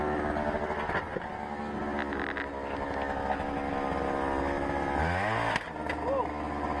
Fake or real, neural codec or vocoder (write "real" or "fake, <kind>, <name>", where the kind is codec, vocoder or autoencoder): real